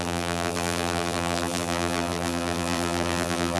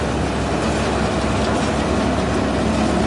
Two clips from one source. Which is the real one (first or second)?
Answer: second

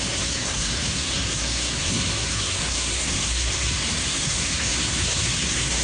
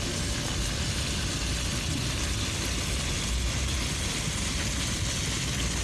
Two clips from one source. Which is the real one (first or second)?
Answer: second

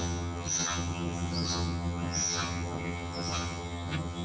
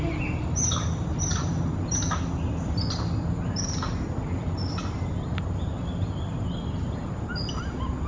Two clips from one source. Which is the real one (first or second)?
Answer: second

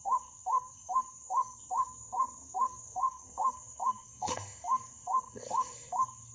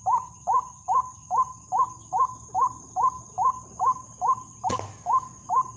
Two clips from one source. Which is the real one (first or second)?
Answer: second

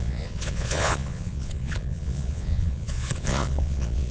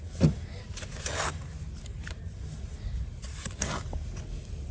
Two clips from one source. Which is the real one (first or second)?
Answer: second